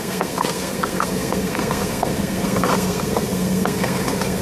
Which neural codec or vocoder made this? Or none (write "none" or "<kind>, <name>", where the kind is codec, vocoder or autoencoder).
codec, SNAC